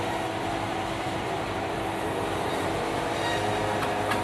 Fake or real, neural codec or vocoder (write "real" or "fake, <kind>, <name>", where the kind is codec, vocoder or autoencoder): real